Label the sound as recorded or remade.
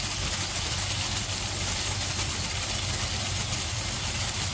recorded